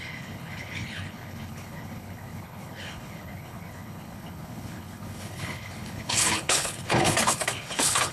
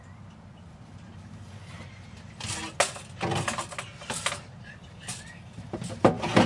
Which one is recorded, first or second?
second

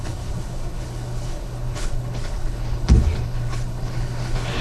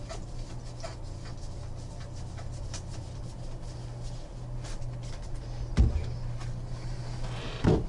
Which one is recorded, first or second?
second